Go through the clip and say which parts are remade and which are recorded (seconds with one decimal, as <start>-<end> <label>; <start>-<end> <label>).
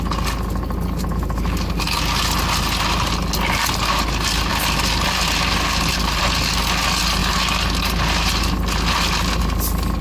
0.0-10.0 recorded